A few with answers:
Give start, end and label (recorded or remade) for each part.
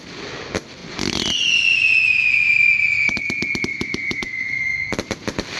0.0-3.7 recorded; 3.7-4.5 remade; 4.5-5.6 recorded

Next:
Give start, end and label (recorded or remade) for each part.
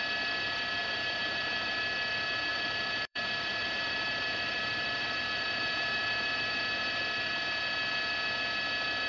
0.0-0.8 recorded; 0.8-1.8 remade; 1.8-2.5 recorded; 2.5-7.0 remade; 7.0-9.1 recorded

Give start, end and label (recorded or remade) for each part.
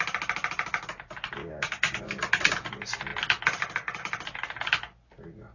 0.0-1.4 recorded; 1.4-2.0 remade; 2.0-5.5 recorded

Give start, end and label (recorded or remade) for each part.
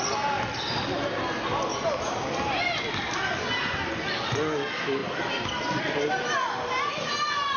0.0-7.6 recorded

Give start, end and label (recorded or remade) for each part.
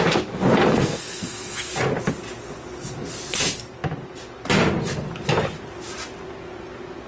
0.0-0.7 recorded; 0.7-1.7 remade; 1.7-7.1 recorded